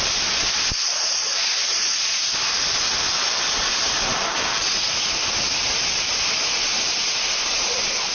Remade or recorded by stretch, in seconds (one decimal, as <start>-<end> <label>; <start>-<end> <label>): 0.0-8.1 recorded